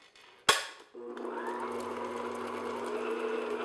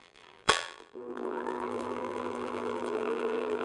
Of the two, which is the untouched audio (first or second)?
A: first